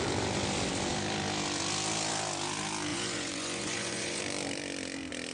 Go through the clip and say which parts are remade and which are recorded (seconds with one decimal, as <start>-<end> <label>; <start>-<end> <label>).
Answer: 0.0-2.9 recorded; 2.9-4.2 remade; 4.2-5.3 recorded